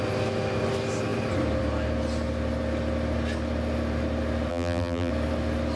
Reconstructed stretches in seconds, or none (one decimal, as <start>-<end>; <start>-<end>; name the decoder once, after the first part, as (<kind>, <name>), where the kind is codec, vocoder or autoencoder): 4.5-5.1 (vocoder, BigVGAN v2)